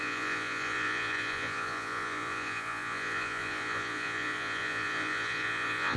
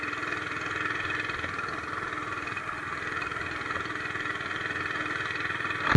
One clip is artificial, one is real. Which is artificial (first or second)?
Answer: first